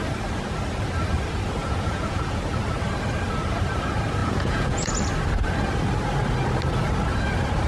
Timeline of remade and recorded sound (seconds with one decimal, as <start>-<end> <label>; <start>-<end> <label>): 0.0-1.6 recorded; 1.6-2.4 remade; 2.4-4.2 recorded; 4.2-4.9 remade; 4.9-7.7 recorded